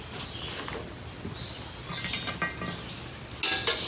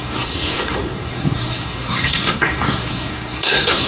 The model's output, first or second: second